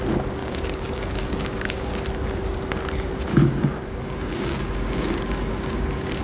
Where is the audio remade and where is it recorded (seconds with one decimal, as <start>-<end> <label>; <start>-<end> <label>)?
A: 0.0-0.4 recorded; 0.4-1.9 remade; 1.9-3.3 recorded; 3.3-6.2 remade